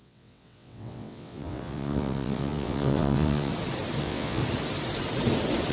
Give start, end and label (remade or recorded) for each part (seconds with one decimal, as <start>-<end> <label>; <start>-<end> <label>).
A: 0.0-3.5 remade; 3.5-4.0 recorded; 4.0-4.4 remade; 4.4-5.7 recorded